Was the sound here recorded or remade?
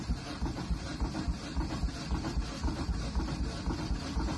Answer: recorded